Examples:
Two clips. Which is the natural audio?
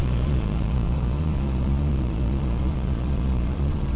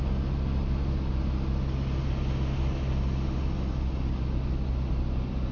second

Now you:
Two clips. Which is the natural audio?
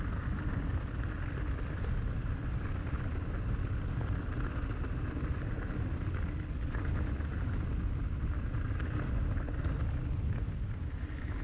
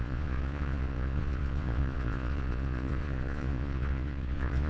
first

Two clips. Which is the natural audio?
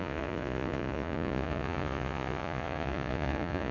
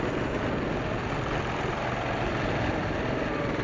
second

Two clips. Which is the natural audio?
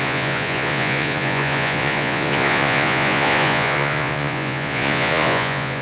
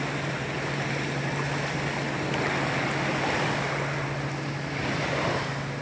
second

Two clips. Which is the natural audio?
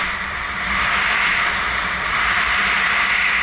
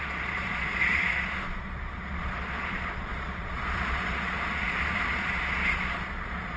first